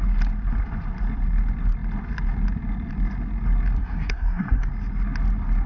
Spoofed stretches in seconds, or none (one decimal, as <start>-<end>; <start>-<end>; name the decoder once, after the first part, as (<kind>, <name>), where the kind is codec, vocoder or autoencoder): 3.8-4.7 (codec, SNAC)